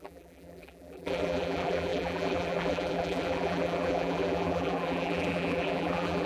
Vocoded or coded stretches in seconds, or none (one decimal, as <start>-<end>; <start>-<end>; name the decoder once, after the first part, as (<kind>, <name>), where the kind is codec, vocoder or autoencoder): 0.0-6.3 (vocoder, BigVGAN v2)